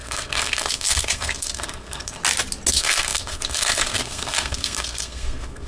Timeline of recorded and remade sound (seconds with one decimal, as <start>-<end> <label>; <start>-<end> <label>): 0.0-2.2 remade; 2.2-2.7 recorded; 2.7-5.7 remade